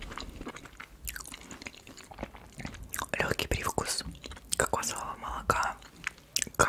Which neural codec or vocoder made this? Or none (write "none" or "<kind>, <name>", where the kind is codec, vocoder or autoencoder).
none